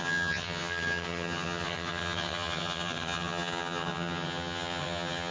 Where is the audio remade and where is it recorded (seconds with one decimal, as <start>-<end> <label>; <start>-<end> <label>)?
0.0-5.3 remade